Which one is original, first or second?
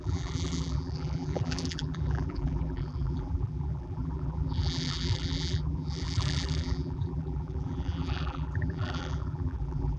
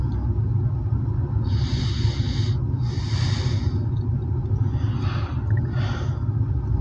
second